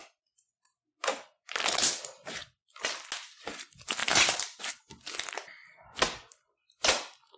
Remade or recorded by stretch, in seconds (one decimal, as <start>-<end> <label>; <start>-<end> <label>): 0.0-4.0 recorded; 4.0-4.6 remade; 4.6-7.4 recorded